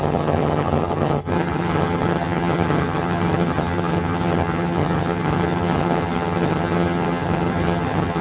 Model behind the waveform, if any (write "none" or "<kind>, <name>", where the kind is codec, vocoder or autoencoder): vocoder, HiFi-GAN